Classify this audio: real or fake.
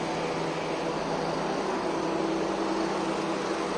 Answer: real